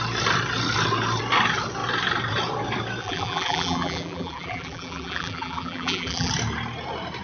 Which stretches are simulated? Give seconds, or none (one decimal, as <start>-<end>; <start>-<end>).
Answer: 3.0-6.3